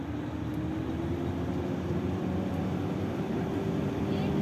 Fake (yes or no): no